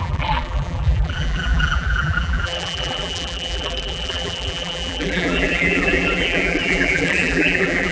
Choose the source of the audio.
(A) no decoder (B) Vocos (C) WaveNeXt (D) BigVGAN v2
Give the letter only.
D